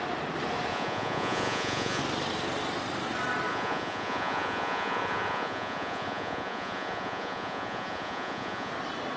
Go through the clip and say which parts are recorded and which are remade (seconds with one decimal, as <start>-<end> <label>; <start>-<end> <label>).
0.0-0.7 recorded; 0.7-2.0 remade; 2.0-3.5 recorded; 3.5-8.7 remade; 8.7-9.2 recorded